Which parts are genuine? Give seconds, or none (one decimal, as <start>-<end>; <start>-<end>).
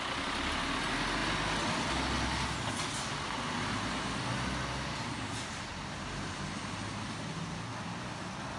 0.0-8.6